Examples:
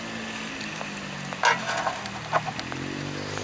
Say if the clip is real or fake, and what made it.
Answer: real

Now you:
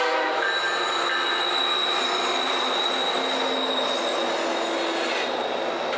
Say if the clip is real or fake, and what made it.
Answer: real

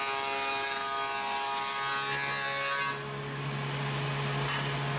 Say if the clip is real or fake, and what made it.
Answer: real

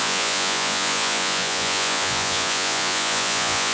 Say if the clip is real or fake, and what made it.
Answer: fake, vocoder, Vocos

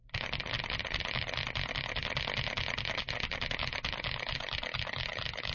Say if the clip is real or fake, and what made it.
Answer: real